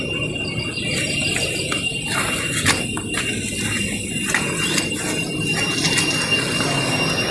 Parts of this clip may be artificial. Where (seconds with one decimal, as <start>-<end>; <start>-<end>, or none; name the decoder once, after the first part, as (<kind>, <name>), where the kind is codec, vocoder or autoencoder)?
none